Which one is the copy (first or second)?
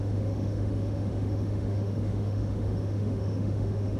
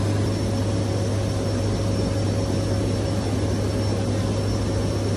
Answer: first